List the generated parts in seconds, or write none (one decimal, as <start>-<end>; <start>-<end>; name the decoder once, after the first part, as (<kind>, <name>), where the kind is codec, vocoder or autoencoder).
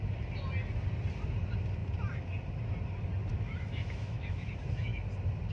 3.3-4.5 (autoencoder, DAC-VAE)